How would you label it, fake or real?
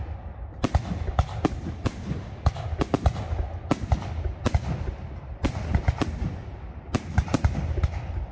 real